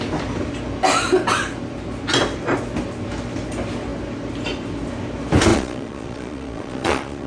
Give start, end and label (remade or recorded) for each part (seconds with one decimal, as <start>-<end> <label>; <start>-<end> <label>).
0.0-5.5 recorded; 5.5-7.3 remade